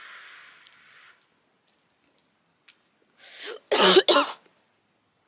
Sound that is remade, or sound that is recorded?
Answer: recorded